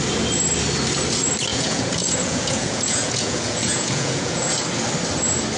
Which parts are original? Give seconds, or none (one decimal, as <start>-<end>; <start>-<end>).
0.0-1.5; 4.6-5.6